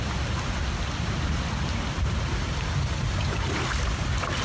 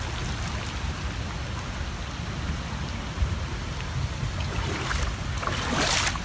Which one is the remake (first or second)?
first